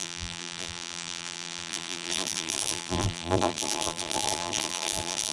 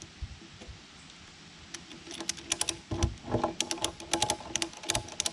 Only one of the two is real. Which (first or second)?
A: second